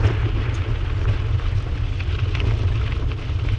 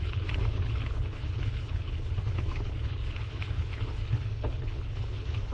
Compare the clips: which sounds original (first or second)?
first